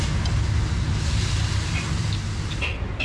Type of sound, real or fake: real